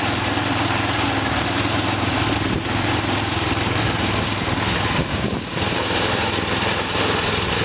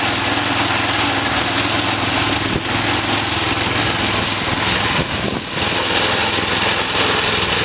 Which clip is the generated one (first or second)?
first